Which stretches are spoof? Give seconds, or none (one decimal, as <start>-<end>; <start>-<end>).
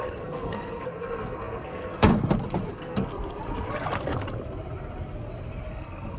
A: 0.0-2.1; 2.7-3.1; 5.7-6.2